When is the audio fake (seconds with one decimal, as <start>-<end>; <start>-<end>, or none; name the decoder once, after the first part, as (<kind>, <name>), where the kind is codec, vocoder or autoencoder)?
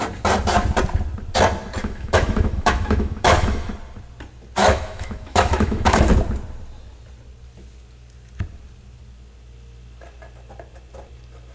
1.8-3.7 (autoencoder, DAC-VAE); 4.6-6.1